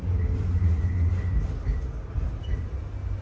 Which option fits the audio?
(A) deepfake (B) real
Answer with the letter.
B